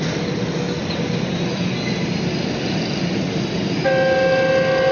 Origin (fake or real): real